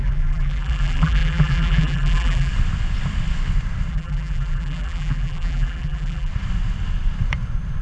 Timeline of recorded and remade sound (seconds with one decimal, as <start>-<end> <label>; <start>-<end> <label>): 0.0-2.5 remade; 2.5-3.9 recorded; 3.9-6.3 remade; 6.3-7.8 recorded